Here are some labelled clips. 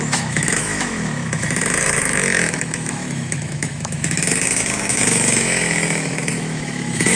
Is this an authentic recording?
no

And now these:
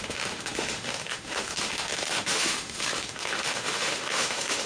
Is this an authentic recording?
no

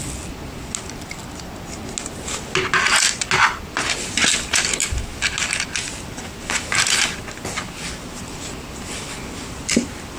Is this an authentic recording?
yes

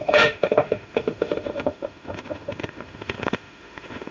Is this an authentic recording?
no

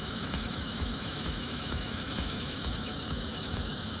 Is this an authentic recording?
no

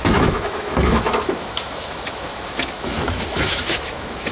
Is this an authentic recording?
no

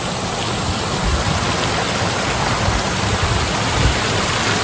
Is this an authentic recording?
yes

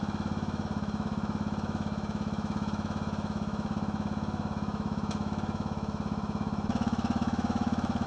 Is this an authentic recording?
no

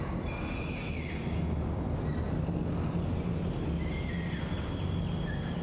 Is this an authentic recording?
yes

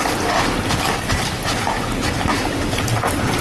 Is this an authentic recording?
yes